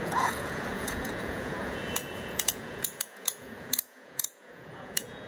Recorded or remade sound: remade